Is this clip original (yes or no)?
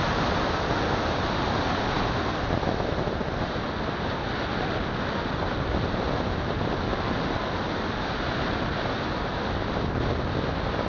yes